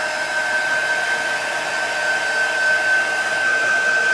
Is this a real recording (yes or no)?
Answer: yes